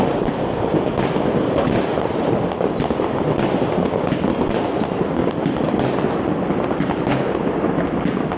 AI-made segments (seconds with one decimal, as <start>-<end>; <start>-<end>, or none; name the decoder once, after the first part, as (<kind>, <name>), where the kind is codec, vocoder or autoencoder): none